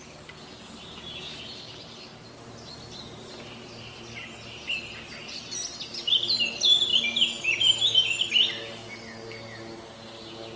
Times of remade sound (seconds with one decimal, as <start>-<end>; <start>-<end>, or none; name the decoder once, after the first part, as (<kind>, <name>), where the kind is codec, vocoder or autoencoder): none